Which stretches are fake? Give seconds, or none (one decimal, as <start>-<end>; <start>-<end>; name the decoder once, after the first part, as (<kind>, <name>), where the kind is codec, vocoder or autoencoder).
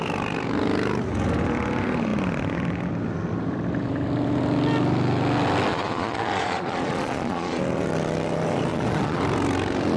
5.7-7.6 (vocoder, Vocos); 8.7-9.2